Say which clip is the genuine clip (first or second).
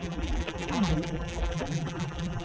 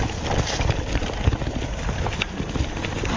second